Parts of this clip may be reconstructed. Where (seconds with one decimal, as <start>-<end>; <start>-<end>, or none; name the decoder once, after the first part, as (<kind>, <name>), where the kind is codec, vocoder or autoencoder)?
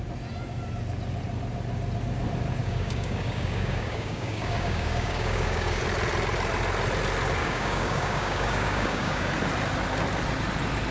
2.6-5.8 (codec, DAC); 7.4-9.3